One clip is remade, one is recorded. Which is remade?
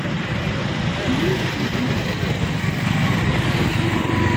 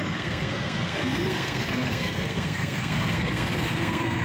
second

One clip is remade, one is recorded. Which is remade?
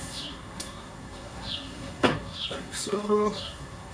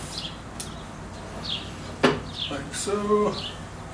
first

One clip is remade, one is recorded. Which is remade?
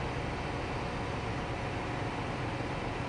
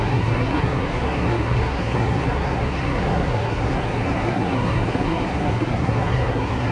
second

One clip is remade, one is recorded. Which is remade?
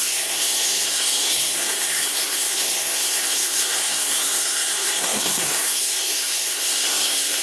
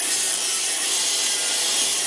first